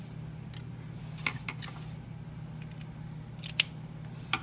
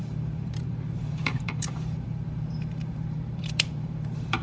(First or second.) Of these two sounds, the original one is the first